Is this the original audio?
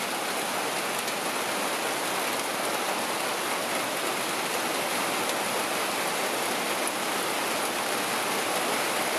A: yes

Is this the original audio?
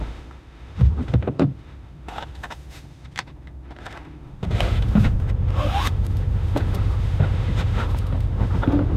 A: no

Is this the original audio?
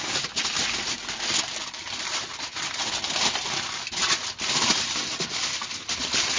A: yes